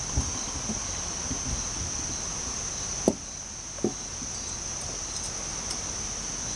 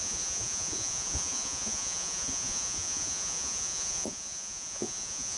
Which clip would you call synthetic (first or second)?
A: second